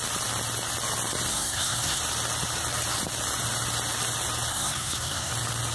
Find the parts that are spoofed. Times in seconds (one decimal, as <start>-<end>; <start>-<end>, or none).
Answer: 1.3-2.0; 4.5-5.3